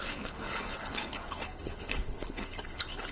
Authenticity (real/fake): fake